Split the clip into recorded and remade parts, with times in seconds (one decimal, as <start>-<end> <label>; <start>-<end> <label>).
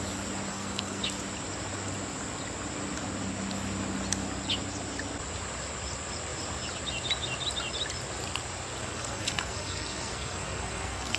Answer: 0.0-0.5 recorded; 0.5-1.0 remade; 1.0-8.8 recorded; 8.8-11.2 remade